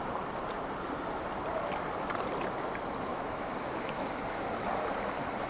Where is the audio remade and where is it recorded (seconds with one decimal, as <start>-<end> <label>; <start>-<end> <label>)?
0.0-3.1 recorded; 3.1-4.0 remade; 4.0-5.5 recorded